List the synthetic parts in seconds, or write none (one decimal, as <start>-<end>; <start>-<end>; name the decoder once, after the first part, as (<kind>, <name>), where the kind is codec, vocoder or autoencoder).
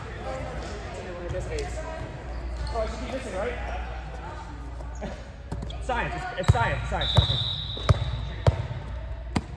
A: none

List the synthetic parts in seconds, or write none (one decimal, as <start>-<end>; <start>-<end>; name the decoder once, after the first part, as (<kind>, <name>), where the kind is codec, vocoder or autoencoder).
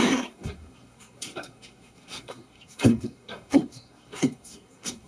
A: 0.0-5.1 (codec, SNAC)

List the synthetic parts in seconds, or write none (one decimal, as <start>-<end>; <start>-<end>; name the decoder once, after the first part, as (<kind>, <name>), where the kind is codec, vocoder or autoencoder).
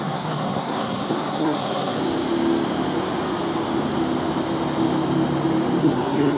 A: 0.0-2.0 (codec, SNAC); 5.8-6.4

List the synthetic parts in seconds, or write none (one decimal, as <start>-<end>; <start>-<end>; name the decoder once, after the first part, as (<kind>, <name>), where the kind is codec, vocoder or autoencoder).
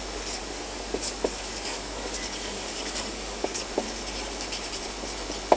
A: 0.4-3.6 (codec, DAC)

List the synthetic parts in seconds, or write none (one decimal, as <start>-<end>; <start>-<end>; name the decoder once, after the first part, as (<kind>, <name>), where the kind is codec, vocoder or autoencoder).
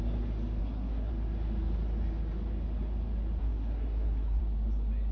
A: 0.6-1.1 (codec, SNAC); 3.4-4.4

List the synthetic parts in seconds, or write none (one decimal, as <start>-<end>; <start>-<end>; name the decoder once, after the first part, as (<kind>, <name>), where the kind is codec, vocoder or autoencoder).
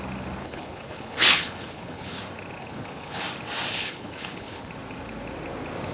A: 0.4-2.2 (codec, HILCodec); 2.6-3.2; 3.7-4.7